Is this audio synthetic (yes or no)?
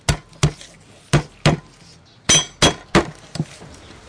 no